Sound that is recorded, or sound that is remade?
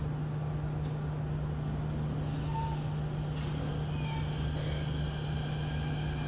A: recorded